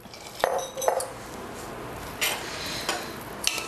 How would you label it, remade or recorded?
recorded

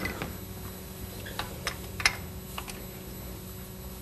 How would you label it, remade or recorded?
recorded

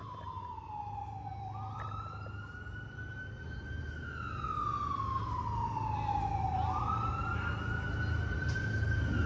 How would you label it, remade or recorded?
recorded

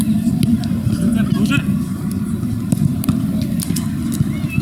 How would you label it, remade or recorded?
recorded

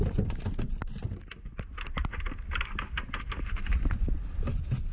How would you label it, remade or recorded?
recorded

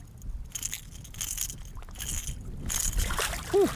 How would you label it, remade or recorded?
recorded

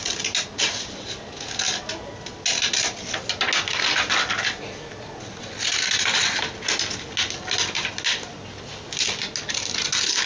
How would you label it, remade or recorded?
recorded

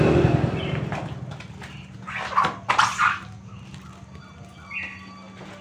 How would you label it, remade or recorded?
recorded